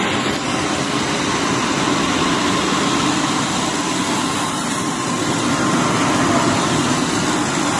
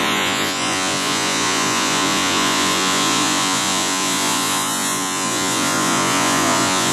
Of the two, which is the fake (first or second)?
second